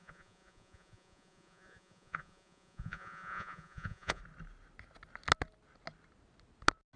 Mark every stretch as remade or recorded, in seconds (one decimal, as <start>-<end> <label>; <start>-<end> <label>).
0.0-4.2 remade; 4.2-7.0 recorded